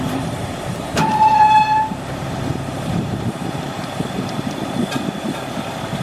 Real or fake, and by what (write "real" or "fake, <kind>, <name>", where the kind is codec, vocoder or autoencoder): fake, vocoder, BigVGAN v2